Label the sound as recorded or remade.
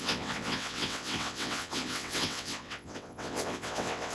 remade